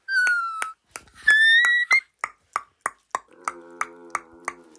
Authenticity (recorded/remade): recorded